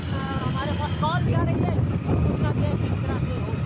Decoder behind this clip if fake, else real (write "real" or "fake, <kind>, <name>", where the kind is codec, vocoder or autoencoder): real